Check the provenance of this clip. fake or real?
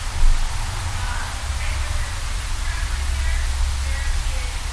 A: real